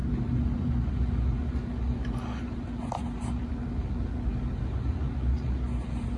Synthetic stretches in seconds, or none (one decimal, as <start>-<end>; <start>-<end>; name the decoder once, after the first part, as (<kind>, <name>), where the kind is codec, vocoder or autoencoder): none